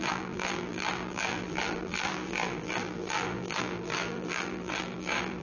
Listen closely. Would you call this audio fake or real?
fake